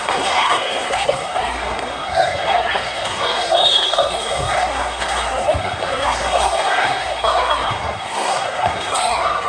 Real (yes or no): no